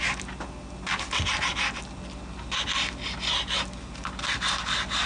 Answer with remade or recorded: recorded